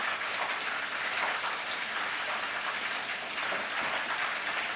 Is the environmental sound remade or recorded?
recorded